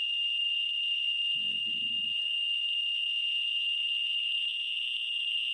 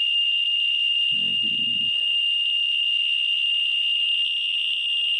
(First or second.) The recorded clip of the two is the second